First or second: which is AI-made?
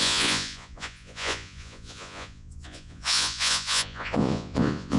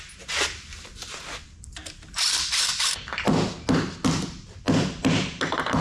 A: first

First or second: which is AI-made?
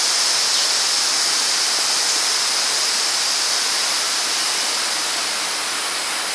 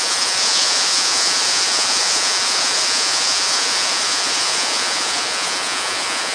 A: second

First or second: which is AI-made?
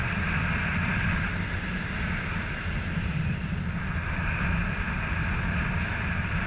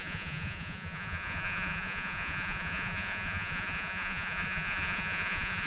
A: second